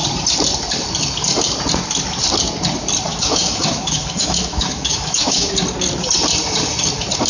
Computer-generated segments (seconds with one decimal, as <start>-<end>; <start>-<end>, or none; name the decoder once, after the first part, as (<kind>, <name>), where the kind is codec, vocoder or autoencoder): 3.1-5.5 (autoencoder, DAC-VAE)

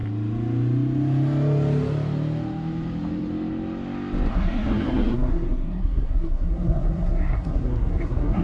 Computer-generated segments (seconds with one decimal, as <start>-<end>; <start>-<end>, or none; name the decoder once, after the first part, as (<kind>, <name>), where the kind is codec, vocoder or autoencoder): 4.3-8.4 (codec, SNAC)

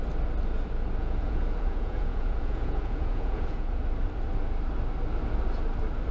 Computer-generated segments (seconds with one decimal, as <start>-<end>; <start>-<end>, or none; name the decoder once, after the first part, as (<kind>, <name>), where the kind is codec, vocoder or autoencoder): 1.0-3.8 (vocoder, Vocos)

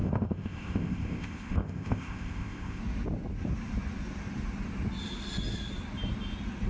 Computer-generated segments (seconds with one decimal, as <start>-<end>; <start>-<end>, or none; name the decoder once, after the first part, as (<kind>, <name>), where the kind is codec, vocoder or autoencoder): 0.0-2.8 (codec, ZipCodec)

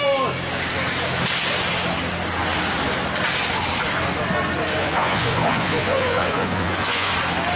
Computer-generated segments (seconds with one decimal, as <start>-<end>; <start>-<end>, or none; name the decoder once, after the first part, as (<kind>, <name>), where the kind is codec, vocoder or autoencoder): 4.8-7.1 (vocoder, Vocos)

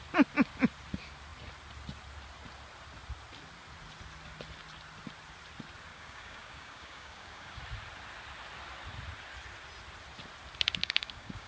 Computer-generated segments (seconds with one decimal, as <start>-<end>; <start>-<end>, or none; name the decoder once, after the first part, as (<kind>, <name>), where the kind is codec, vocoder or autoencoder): 5.9-7.6 (codec, DAC); 10.8-11.5

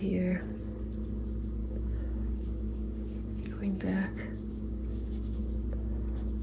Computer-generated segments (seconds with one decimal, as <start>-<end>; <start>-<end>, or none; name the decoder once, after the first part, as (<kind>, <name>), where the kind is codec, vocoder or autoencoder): 1.6-5.4 (codec, DAC)